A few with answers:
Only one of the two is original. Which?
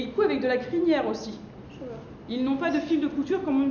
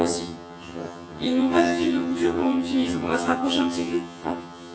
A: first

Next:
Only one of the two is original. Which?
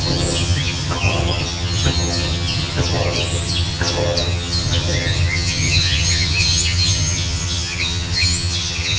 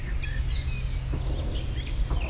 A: second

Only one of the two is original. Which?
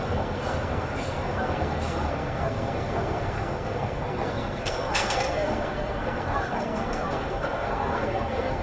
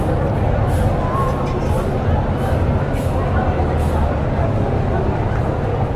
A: second